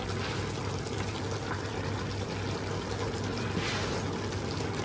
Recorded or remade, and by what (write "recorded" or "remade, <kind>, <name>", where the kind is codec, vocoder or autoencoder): recorded